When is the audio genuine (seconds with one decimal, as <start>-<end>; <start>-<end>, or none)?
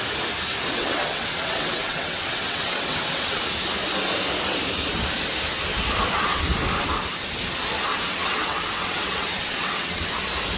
0.0-0.6; 3.4-7.9; 10.1-10.6